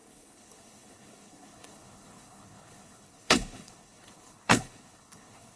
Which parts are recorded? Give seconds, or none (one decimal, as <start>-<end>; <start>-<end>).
none